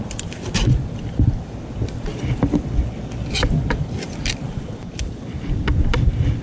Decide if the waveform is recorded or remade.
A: recorded